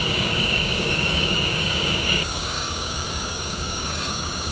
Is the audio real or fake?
fake